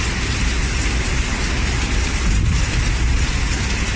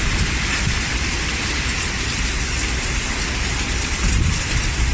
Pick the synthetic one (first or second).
second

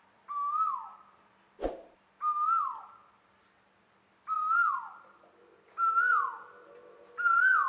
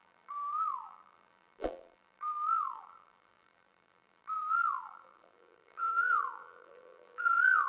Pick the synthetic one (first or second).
second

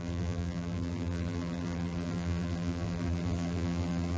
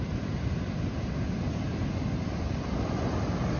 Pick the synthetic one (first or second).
first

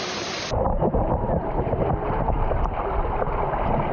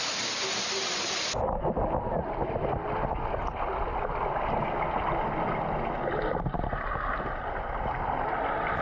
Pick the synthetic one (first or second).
first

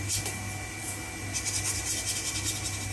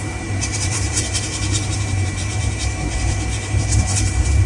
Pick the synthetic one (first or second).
second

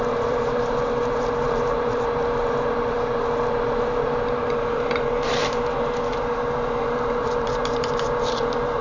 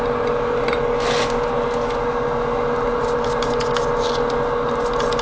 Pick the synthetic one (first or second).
first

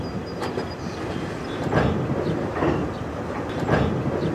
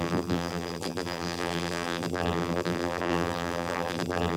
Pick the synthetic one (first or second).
second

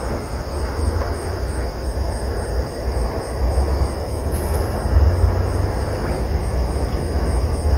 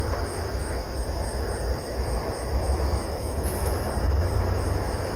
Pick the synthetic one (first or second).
second